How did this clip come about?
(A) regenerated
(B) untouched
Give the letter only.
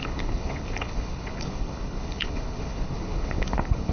A